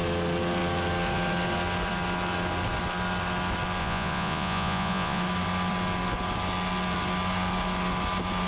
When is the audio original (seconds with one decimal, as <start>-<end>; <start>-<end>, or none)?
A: 0.0-3.8; 5.2-8.5